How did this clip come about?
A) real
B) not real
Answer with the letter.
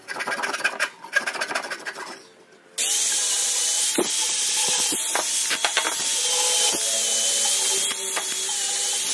A